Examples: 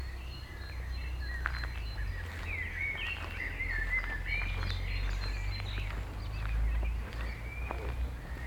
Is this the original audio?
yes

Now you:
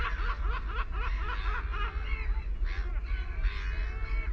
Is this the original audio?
yes